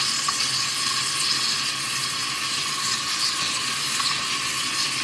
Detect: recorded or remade recorded